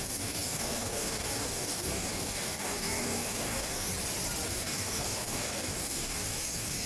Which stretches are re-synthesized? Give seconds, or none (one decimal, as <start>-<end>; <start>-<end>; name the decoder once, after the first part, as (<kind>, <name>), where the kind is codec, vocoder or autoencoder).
0.0-3.9 (codec, DAC); 4.5-6.9